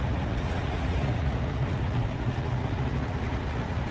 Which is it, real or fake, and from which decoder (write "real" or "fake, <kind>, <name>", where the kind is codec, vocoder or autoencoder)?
fake, vocoder, Vocos